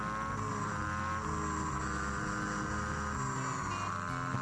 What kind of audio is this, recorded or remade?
recorded